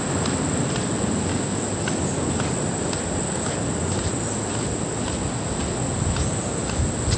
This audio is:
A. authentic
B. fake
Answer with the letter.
A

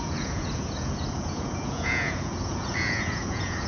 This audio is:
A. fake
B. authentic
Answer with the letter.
A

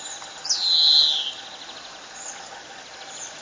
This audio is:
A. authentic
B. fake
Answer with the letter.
A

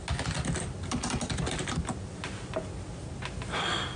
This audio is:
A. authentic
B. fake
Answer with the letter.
A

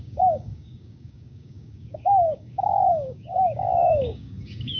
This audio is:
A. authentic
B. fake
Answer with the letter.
B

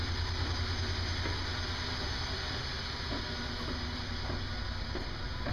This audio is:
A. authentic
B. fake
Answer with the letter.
A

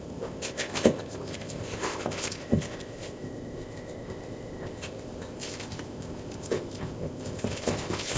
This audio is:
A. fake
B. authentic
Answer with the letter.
A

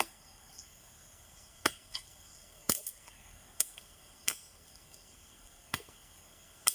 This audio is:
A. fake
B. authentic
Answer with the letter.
A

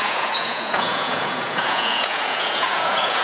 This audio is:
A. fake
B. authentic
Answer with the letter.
A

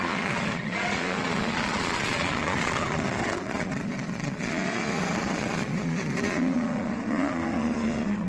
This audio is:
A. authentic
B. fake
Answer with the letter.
B